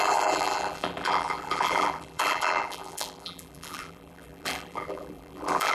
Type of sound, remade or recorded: remade